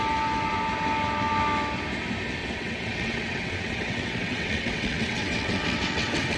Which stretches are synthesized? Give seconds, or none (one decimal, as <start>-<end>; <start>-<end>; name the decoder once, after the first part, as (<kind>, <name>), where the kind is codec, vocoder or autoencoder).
2.4-6.4 (vocoder, WaveNeXt)